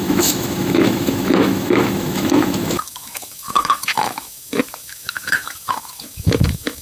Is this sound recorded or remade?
remade